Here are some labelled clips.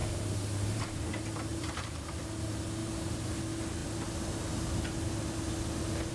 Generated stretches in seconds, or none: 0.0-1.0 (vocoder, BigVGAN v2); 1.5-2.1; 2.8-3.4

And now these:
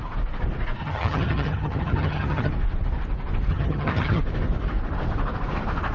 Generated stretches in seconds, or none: 0.8-2.5 (vocoder, HiFi-GAN); 3.5-4.2

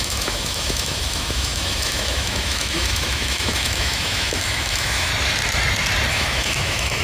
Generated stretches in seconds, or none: 0.0-5.1 (autoencoder, DAC-VAE); 6.1-7.0

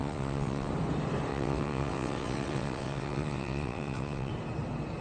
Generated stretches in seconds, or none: 0.0-0.7 (vocoder, WaveNeXt); 1.3-4.3

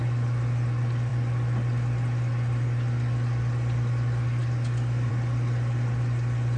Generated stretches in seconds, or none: none

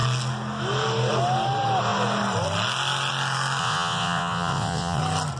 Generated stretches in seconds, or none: 3.6-5.0 (vocoder, WaveNeXt)

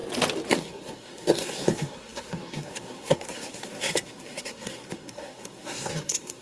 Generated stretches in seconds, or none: 0.5-6.4 (codec, SNAC)